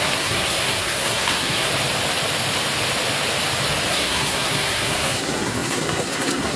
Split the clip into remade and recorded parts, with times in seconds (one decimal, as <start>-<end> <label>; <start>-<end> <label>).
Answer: 0.0-1.7 remade; 1.7-3.9 recorded; 3.9-6.6 remade